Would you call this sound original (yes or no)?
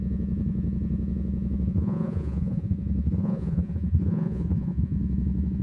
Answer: no